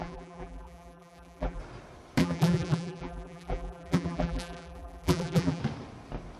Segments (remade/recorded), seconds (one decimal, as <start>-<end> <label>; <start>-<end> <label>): 0.0-1.6 remade; 1.6-2.2 recorded; 2.2-5.6 remade; 5.6-6.4 recorded

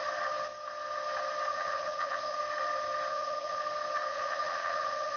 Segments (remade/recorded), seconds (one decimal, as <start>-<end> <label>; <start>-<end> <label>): 0.0-1.5 recorded; 1.5-2.4 remade; 2.4-3.1 recorded; 3.1-3.6 remade; 3.6-4.1 recorded; 4.1-5.2 remade